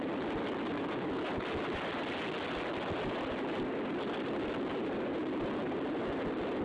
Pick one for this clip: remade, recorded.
recorded